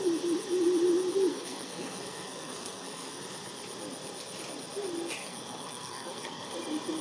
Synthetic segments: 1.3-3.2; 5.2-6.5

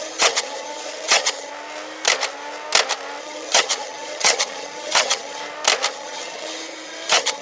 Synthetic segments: 0.0-1.5; 3.2-5.4; 5.9-7.4

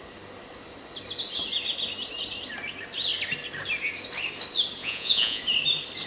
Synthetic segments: 4.8-5.4

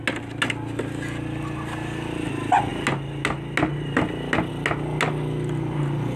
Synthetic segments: none

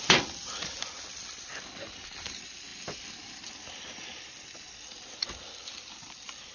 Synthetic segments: none

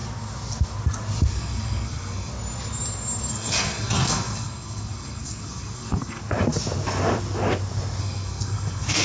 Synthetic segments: 1.3-2.3; 3.3-6.2; 8.0-9.0

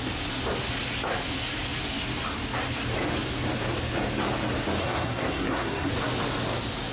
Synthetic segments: 4.8-5.9